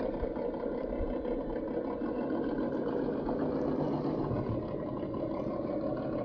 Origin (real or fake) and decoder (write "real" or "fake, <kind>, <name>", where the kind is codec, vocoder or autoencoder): real